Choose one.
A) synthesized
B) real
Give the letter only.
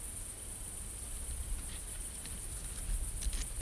B